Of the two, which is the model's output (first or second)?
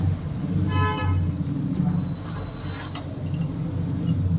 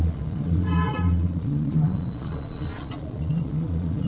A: second